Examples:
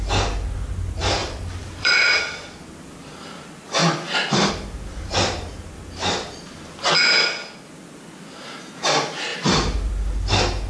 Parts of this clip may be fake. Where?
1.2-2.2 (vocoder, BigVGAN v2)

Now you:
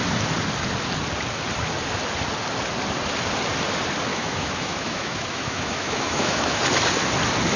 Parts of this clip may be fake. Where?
4.1-6.6 (autoencoder, DAC-VAE)

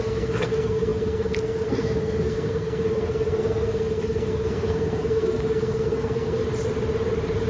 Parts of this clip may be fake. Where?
0.0-6.4 (codec, SNAC)

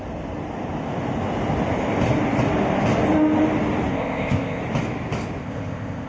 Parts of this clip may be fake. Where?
3.9-4.6 (codec, ZipCodec); 5.4-6.1